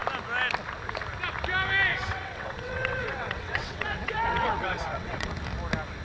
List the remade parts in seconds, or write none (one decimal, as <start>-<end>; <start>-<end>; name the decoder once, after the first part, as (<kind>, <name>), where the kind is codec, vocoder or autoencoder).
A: 1.9-5.3 (vocoder, WaveNeXt)